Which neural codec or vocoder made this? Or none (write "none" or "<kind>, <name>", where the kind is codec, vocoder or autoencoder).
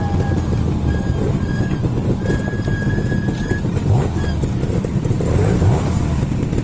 none